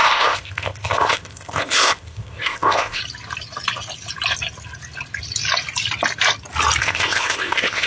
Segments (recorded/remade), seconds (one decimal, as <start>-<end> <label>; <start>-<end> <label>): 0.0-3.0 remade; 3.0-6.8 recorded; 6.8-7.9 remade